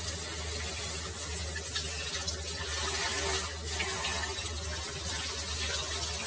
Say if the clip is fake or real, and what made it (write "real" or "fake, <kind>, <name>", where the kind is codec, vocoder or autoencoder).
real